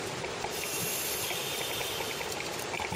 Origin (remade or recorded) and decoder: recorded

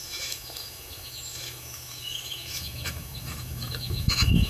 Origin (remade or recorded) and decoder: remade, autoencoder, DAC-VAE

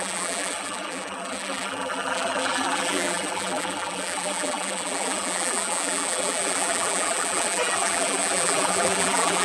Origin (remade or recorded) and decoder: remade, vocoder, BigVGAN v2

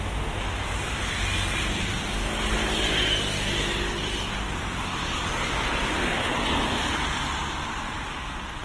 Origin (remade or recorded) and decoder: recorded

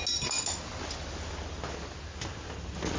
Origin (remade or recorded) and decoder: recorded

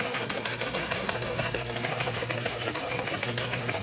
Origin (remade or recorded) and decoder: remade, codec, SNAC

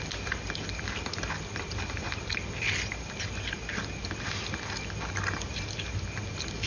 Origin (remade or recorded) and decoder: recorded